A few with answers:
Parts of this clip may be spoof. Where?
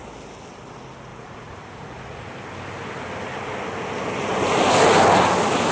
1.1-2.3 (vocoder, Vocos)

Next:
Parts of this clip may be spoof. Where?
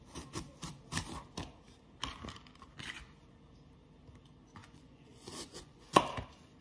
4.6-6.0 (vocoder, Vocos)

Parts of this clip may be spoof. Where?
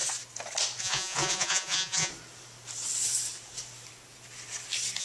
0.8-2.1 (vocoder, Vocos)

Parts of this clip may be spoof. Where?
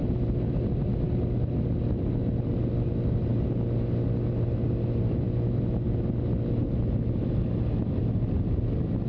none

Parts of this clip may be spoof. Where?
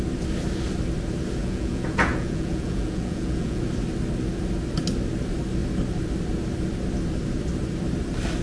1.4-3.6 (vocoder, Vocos)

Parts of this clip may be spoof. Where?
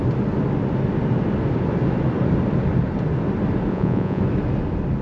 3.7-4.2 (vocoder, Vocos)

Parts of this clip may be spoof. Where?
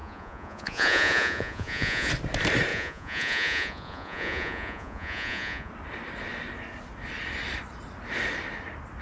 0.0-2.1 (vocoder, Vocos); 2.7-5.7